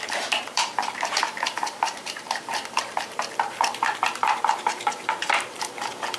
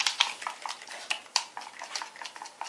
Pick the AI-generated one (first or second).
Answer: first